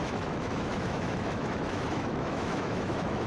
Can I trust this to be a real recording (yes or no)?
no